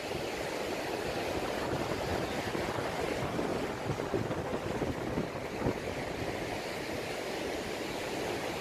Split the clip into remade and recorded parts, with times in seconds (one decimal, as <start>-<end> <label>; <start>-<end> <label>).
0.0-8.6 recorded